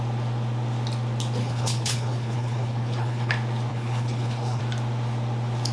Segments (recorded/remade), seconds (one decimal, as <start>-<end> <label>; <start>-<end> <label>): 0.0-1.4 recorded; 1.4-3.3 remade; 3.3-3.7 recorded; 3.7-4.6 remade; 4.6-5.7 recorded